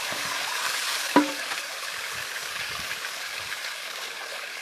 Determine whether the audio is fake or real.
fake